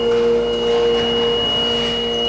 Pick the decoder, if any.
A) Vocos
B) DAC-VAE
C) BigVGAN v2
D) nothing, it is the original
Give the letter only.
D